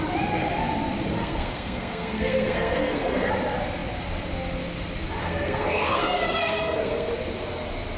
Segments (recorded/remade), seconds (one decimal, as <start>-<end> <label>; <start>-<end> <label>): 0.0-1.2 recorded; 1.2-3.3 remade; 3.3-5.2 recorded; 5.2-7.1 remade; 7.1-8.0 recorded